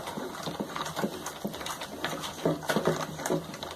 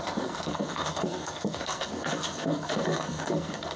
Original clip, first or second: first